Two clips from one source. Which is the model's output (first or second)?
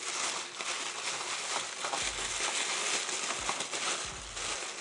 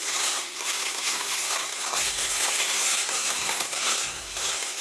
second